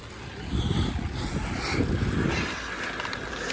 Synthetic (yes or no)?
no